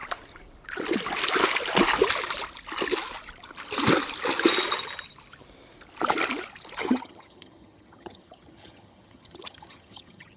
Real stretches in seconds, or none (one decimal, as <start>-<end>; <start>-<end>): 0.0-6.8